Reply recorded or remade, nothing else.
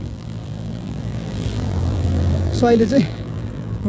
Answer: remade